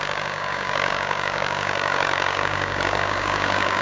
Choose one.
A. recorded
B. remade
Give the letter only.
B